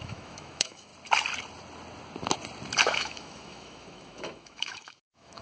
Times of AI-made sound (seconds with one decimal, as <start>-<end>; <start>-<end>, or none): 0.0-0.9; 2.8-5.4